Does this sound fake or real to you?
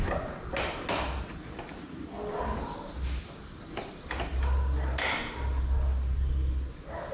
real